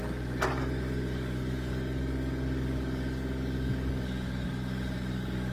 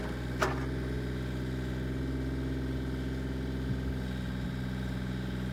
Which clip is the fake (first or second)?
first